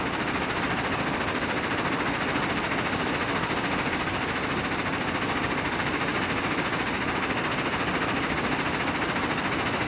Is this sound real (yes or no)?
yes